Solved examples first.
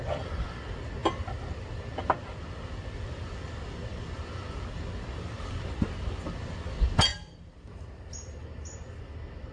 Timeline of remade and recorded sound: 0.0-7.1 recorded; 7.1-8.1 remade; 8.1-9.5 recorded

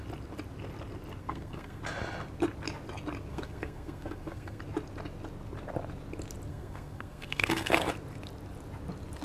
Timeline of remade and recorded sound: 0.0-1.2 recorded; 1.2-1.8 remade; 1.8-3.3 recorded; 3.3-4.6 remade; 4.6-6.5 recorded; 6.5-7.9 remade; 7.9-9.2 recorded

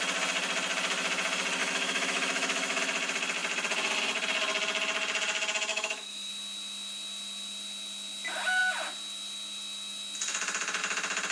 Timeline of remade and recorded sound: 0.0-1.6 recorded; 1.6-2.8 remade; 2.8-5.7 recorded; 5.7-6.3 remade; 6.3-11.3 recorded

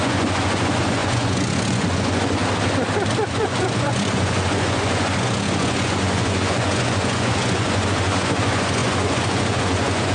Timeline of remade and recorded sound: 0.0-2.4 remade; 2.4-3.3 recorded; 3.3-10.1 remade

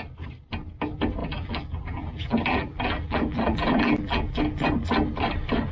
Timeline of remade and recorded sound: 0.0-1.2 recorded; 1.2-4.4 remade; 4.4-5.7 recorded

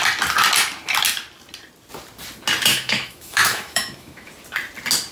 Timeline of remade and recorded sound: 0.0-2.7 recorded; 2.7-4.3 remade; 4.3-5.1 recorded

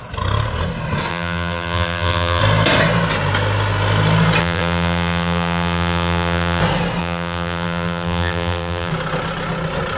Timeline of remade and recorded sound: 0.0-1.1 recorded; 1.1-2.4 remade; 2.4-4.4 recorded; 4.4-6.6 remade; 6.6-7.0 recorded; 7.0-8.9 remade; 8.9-10.0 recorded

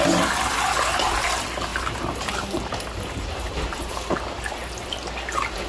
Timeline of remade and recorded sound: 0.0-1.7 recorded; 1.7-5.1 remade; 5.1-5.7 recorded